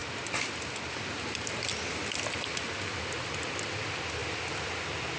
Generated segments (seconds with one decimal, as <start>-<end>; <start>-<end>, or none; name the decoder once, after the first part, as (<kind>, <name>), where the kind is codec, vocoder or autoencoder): none

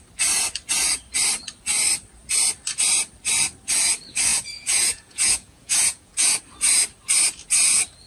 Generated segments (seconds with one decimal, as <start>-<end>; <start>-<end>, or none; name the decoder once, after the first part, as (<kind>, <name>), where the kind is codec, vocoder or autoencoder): 4.3-6.4 (vocoder, Vocos)

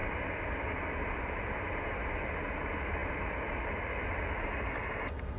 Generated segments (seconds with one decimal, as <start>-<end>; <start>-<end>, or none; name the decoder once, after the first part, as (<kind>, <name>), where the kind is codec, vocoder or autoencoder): none

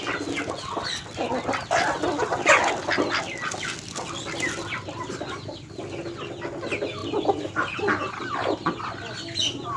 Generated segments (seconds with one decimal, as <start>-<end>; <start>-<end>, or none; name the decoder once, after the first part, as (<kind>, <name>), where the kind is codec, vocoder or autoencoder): none